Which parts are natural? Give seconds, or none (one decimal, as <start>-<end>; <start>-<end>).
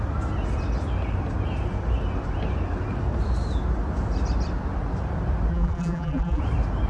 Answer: 0.0-5.5; 6.4-6.9